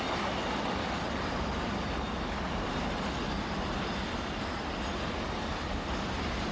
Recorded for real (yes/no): yes